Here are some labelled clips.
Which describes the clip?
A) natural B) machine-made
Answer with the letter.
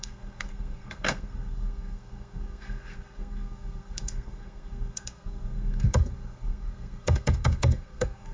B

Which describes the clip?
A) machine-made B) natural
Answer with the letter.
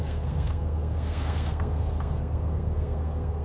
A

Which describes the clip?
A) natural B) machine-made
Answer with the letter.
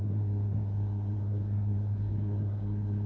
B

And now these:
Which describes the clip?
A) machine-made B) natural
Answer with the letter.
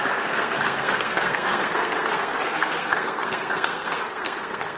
A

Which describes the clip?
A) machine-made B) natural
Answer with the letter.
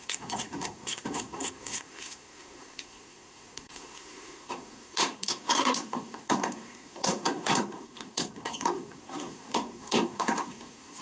A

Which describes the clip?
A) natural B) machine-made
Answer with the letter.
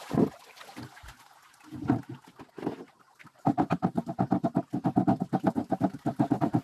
A